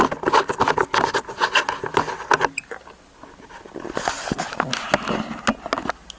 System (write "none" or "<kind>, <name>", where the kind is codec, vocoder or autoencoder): none